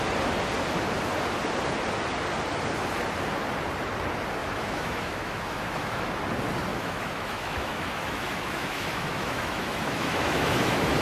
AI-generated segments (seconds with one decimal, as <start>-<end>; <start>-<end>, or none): 4.4-6.1; 6.7-11.0